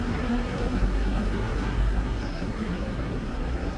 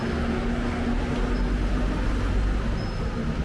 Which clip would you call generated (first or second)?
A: first